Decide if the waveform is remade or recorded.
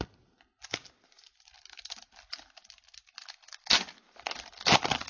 recorded